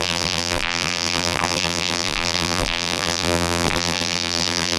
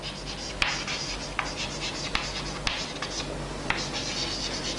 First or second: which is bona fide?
second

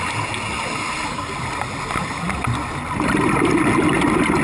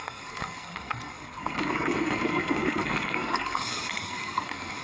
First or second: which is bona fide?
first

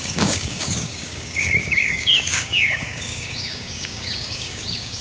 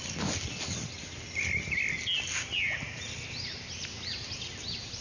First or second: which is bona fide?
second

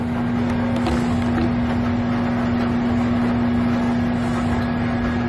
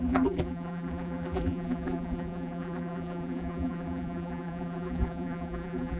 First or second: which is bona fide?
first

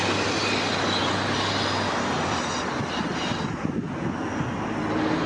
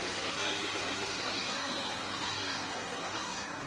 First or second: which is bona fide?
first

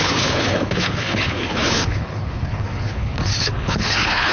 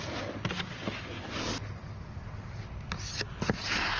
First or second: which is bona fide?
second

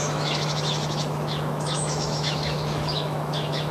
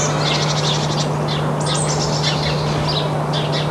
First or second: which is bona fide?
second